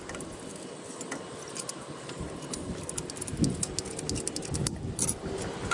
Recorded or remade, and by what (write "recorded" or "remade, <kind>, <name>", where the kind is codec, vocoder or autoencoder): recorded